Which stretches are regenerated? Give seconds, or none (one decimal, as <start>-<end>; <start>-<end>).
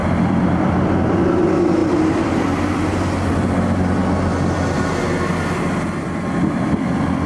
0.0-1.4; 1.8-2.9